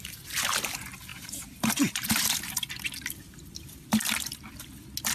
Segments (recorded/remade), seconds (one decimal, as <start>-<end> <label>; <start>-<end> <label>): 0.0-1.1 recorded; 1.1-2.7 remade; 2.7-5.1 recorded